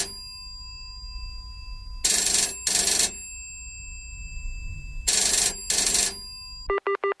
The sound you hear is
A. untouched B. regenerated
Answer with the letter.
A